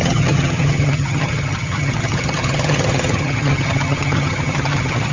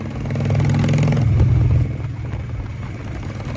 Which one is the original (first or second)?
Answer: second